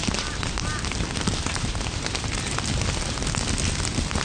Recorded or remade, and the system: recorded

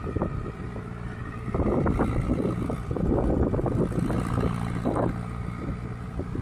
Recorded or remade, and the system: remade, vocoder, BigVGAN v2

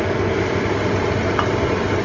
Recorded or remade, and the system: recorded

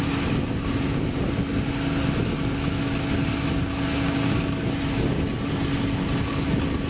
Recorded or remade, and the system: recorded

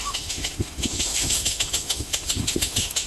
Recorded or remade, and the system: remade, autoencoder, DAC-VAE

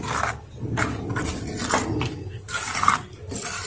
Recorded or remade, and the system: recorded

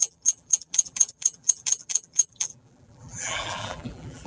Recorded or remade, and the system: remade, vocoder, BigVGAN v2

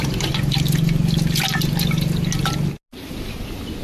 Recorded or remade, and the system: recorded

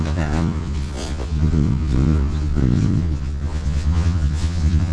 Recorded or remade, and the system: remade, vocoder, Vocos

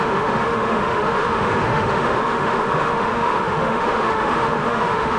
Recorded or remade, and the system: remade, autoencoder, DAC-VAE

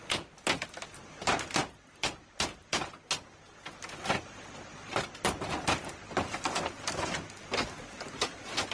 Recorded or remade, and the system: recorded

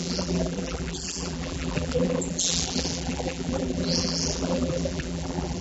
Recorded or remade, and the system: remade, vocoder, BigVGAN v2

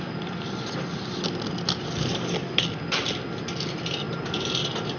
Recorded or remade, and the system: recorded